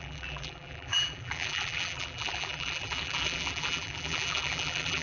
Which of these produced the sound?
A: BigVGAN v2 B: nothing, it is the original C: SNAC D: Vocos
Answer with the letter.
A